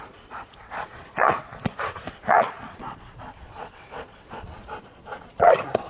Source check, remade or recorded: remade